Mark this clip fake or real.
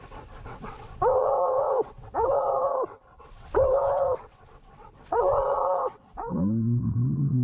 fake